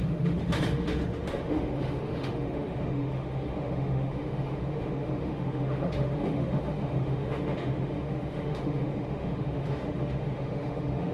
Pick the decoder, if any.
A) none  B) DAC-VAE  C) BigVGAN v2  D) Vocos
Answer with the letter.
B